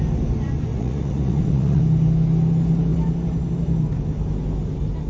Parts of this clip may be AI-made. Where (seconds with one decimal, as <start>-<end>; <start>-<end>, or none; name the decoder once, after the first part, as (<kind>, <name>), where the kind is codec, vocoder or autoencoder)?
0.7-1.8 (vocoder, Vocos)